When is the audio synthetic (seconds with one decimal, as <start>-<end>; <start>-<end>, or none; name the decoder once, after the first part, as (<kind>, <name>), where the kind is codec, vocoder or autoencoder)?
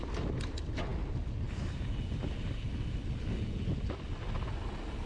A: none